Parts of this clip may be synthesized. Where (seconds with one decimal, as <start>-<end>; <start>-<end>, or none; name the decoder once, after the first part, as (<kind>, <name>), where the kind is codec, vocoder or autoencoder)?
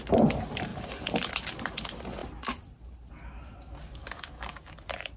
4.0-4.7 (codec, DAC)